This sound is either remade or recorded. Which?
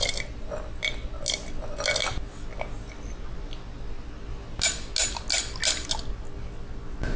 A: recorded